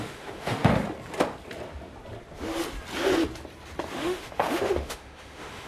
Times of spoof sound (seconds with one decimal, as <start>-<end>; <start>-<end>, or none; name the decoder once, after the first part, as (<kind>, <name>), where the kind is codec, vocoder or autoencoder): 0.0-0.7 (autoencoder, DAC-VAE); 3.9-5.7